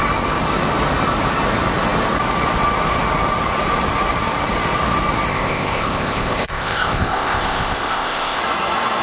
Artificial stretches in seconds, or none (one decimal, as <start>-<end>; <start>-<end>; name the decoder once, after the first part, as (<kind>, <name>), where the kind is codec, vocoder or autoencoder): 5.3-8.4 (codec, ZipCodec)